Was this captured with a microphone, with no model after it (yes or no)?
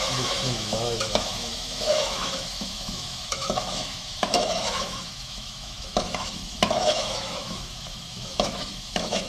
no